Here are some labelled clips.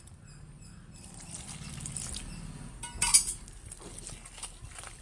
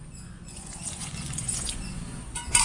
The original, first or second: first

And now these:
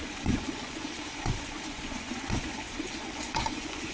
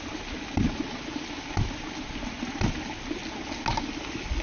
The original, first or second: second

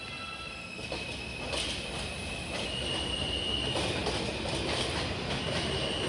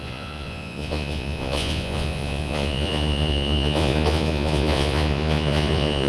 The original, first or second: first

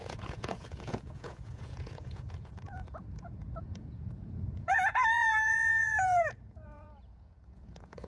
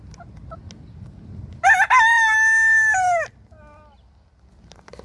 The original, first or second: second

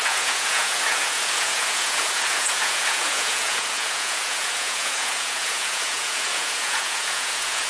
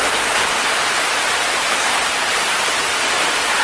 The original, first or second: second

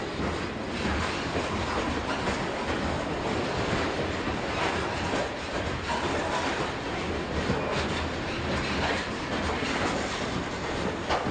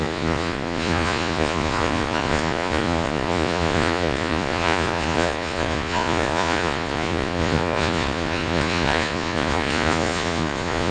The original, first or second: first